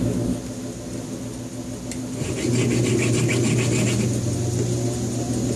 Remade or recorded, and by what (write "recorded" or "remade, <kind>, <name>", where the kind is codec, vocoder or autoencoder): recorded